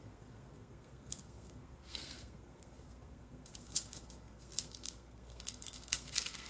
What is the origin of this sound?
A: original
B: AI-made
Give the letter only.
B